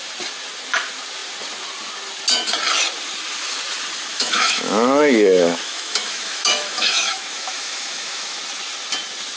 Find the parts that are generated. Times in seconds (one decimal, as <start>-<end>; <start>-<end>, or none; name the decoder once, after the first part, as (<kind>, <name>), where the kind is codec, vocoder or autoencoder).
4.1-8.4 (autoencoder, DAC-VAE)